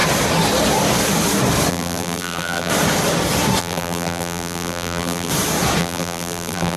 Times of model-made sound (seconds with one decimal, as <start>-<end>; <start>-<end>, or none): 1.7-2.7; 3.6-5.3; 5.8-6.8